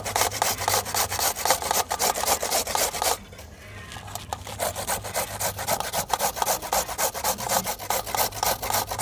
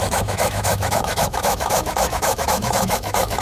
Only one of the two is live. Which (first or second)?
first